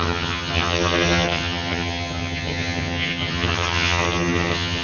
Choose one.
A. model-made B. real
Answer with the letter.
A